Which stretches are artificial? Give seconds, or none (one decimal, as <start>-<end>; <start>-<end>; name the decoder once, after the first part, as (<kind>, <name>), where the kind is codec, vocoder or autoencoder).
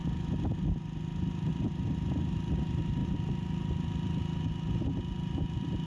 none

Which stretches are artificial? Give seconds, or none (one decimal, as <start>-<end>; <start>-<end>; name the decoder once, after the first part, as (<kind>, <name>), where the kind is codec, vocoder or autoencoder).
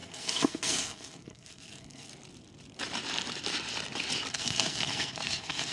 0.0-2.1 (codec, SNAC); 4.3-5.7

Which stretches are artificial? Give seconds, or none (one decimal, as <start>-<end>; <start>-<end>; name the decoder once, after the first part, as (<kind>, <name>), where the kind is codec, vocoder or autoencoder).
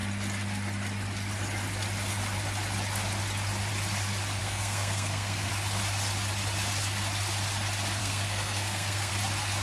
4.4-5.5 (codec, SNAC); 8.0-9.1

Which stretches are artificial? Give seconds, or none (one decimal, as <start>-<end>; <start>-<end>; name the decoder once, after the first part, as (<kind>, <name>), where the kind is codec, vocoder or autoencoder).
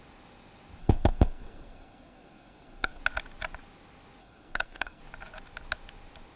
0.8-3.0 (codec, SNAC); 4.2-5.0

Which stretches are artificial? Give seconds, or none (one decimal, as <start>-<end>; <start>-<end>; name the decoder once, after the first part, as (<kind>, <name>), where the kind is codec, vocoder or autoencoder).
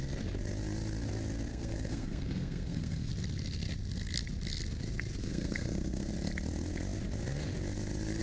1.5-3.1 (codec, SNAC); 5.2-6.1